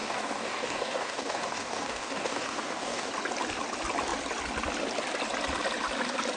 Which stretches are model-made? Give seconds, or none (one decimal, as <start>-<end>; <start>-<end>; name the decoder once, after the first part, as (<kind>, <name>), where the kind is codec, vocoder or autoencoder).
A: 0.0-3.1 (codec, DAC)